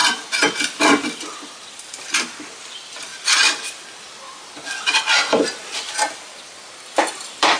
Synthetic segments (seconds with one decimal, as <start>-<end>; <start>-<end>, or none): 1.7-3.1; 5.9-7.6